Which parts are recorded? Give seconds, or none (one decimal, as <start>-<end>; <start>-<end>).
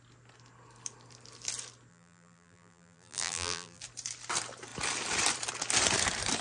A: 0.0-1.9; 3.8-6.4